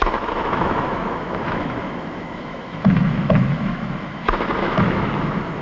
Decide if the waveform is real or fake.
fake